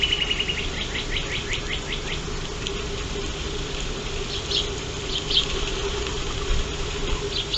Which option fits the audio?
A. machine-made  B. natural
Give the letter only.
A